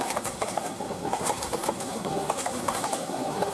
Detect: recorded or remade remade